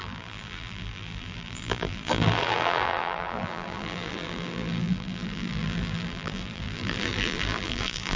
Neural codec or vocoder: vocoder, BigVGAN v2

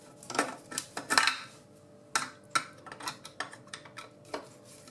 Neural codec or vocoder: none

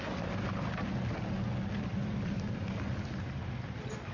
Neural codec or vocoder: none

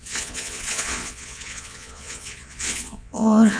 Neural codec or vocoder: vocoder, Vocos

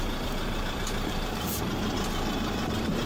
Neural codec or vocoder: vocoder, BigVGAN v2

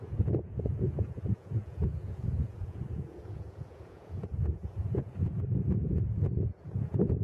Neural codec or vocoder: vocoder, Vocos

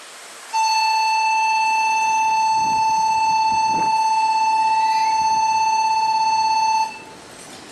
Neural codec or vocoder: none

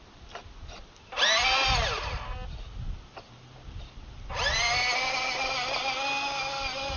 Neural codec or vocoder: none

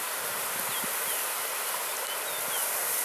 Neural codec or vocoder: none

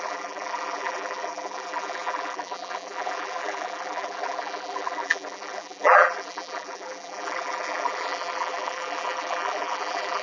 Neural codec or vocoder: vocoder, BigVGAN v2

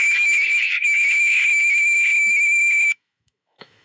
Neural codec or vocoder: autoencoder, DAC-VAE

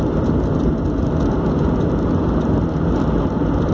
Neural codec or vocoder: none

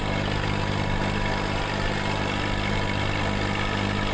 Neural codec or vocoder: none